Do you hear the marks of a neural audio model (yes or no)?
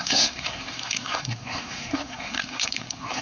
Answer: yes